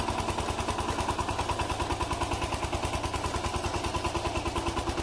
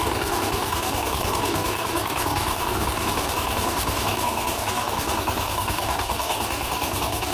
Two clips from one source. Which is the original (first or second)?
first